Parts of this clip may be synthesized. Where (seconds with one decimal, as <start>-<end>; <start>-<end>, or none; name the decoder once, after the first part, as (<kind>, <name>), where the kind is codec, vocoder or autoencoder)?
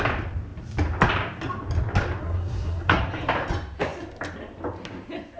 2.2-3.0 (codec, SNAC)